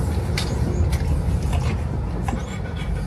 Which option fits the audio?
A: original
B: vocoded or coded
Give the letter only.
A